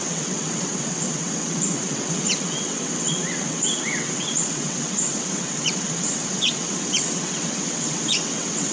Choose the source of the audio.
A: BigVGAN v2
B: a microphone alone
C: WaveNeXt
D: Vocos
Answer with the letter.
C